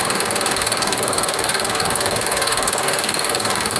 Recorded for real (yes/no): no